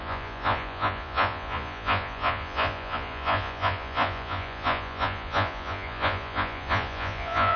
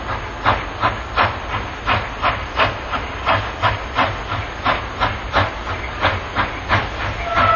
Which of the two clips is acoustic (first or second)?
second